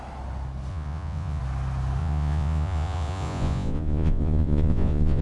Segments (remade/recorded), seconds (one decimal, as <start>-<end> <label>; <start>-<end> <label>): 0.0-0.7 recorded; 0.7-1.4 remade; 1.4-2.0 recorded; 2.0-5.2 remade